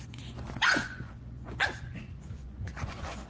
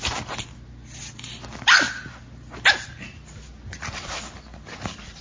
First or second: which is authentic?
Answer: second